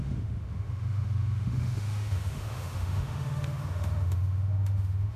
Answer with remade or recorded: remade